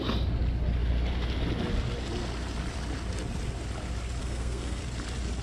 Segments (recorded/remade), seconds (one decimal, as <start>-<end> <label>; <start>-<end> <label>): 0.0-4.2 recorded; 4.2-4.8 remade; 4.8-5.4 recorded